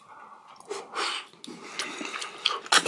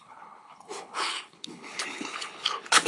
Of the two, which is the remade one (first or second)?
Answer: second